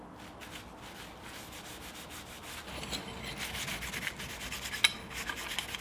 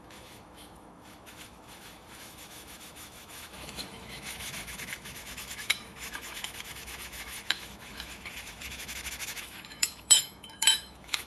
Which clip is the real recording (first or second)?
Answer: first